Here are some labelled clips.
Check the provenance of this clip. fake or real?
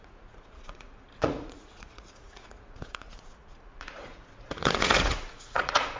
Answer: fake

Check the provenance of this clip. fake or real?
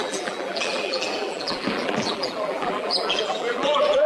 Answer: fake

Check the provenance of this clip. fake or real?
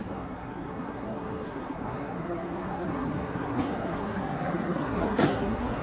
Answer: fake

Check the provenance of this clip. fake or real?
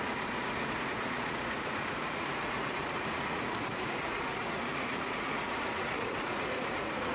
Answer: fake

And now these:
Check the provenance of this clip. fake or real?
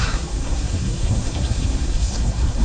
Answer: fake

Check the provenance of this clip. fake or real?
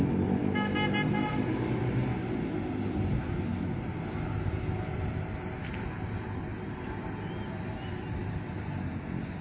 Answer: real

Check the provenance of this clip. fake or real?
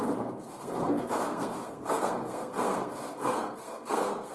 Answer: fake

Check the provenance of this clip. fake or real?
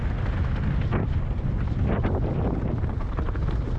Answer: real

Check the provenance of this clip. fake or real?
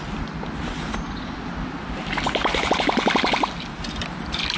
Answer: real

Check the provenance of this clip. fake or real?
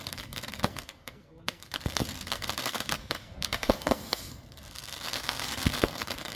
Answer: fake